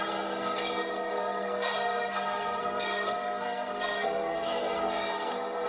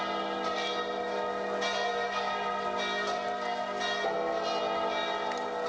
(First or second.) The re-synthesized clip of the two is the first